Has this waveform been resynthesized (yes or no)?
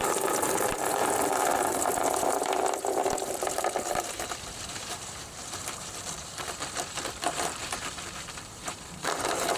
yes